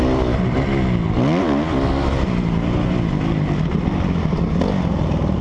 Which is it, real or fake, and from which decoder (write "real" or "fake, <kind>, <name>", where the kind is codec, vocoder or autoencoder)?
real